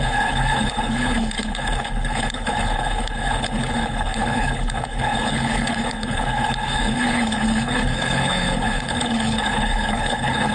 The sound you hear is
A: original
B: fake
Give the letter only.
B